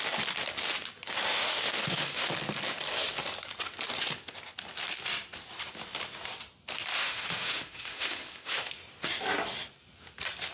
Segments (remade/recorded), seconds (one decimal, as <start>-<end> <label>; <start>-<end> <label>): 0.0-1.3 recorded; 1.3-2.3 remade; 2.3-6.9 recorded; 6.9-8.7 remade; 8.7-10.5 recorded